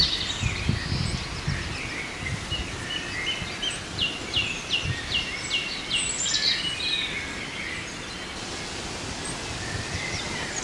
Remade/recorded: recorded